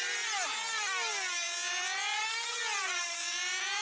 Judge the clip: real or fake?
real